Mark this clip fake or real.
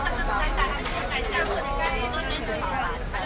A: real